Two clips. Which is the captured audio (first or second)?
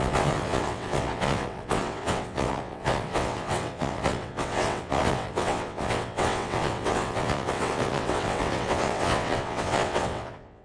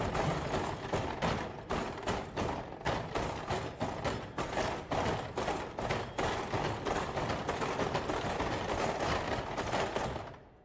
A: second